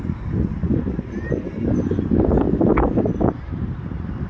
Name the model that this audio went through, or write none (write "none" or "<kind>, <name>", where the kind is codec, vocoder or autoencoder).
none